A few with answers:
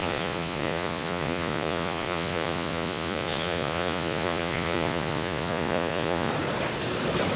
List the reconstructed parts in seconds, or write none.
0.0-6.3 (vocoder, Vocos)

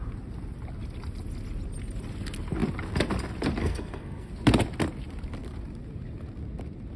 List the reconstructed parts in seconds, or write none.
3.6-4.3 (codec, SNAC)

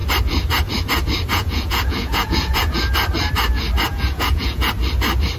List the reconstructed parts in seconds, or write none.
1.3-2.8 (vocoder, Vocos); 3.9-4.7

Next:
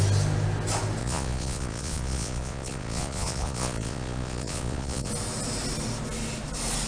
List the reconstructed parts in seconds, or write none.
1.0-5.1 (vocoder, Vocos)

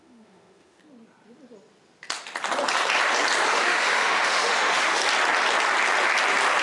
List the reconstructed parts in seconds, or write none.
0.0-0.8 (autoencoder, DAC-VAE); 3.5-5.0

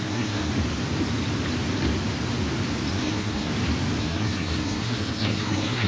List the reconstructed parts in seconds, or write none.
0.0-0.5 (codec, SNAC); 2.9-3.5; 4.0-5.9

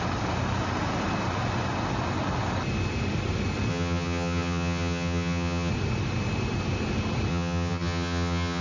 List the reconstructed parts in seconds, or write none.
3.7-5.7 (vocoder, HiFi-GAN); 7.3-8.6

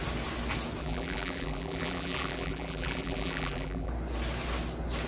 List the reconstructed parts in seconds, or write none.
0.8-3.9 (vocoder, BigVGAN v2)